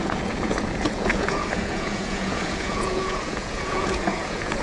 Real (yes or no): no